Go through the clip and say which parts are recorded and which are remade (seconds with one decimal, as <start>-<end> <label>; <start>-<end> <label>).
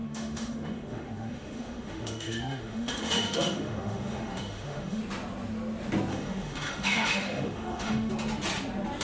0.0-5.0 remade; 5.0-6.1 recorded; 6.1-8.1 remade; 8.1-9.0 recorded